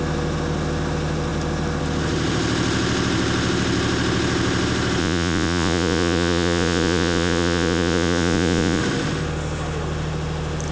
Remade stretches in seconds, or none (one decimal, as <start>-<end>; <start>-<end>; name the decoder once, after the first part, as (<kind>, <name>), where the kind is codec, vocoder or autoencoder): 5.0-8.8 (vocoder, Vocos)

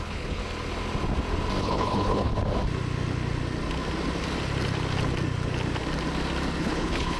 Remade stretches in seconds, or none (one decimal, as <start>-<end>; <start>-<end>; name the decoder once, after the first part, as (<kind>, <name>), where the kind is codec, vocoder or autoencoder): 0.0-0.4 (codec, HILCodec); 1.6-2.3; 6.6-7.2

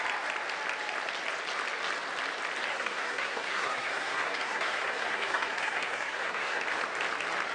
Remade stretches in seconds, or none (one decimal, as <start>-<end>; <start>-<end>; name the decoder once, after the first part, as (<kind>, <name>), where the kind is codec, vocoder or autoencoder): 2.7-6.6 (codec, SNAC)

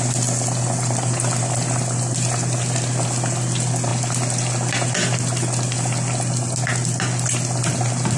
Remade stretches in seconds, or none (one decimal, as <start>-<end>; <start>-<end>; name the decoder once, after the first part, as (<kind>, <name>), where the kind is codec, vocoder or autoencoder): none